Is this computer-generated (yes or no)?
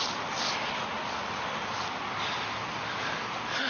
no